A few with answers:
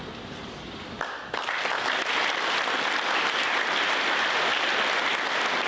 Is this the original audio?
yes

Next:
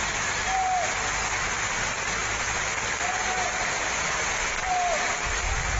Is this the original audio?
yes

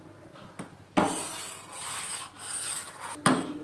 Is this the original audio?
yes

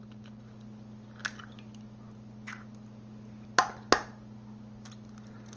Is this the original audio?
yes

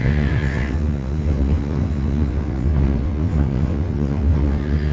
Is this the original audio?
no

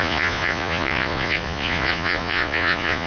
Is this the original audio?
no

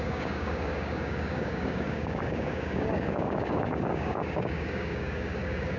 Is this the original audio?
no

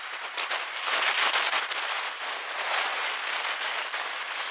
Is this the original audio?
yes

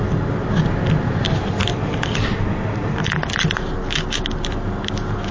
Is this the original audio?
yes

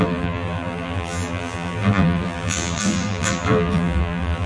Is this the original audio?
no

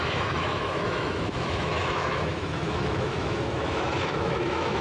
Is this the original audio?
no